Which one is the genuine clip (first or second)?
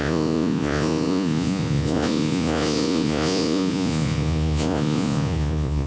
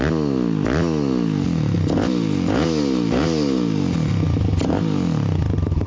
second